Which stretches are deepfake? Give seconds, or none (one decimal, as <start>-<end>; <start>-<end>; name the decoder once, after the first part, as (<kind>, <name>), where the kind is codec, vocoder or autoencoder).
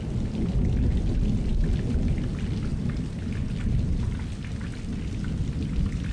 none